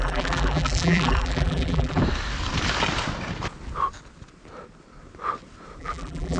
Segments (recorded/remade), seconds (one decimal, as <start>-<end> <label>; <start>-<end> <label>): 0.0-2.0 remade; 2.0-5.8 recorded; 5.8-6.4 remade